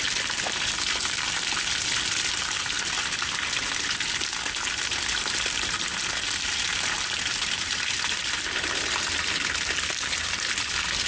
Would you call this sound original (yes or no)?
yes